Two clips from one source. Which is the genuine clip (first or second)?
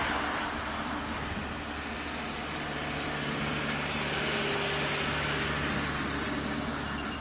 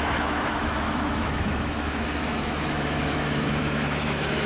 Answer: first